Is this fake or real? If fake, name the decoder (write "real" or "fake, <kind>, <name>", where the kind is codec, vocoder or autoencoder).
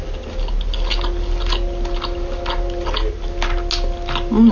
real